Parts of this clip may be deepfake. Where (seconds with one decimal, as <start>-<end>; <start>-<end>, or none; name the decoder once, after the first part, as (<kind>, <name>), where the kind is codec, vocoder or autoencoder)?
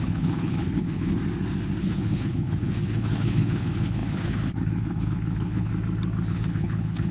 0.0-1.2 (codec, HILCodec); 1.8-5.7; 6.3-7.1